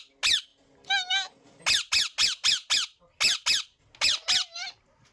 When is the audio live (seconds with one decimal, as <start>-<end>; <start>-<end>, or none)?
0.0-5.1